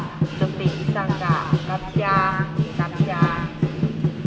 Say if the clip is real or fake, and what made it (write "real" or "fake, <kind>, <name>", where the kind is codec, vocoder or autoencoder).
real